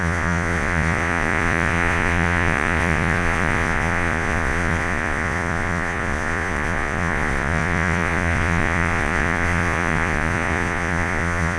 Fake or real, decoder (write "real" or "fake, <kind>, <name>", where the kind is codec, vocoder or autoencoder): fake, vocoder, Vocos